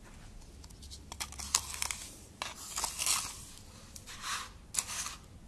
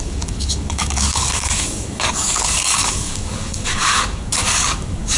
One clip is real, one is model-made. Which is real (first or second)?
first